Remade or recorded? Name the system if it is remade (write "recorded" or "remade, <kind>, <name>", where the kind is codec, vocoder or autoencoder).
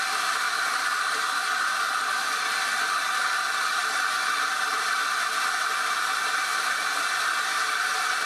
recorded